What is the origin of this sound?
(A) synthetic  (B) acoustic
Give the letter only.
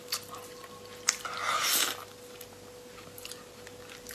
B